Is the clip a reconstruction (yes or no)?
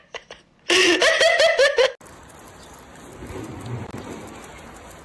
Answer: no